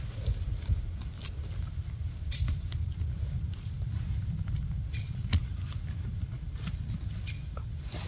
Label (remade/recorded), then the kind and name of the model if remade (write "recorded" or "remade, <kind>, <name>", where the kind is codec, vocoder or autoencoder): recorded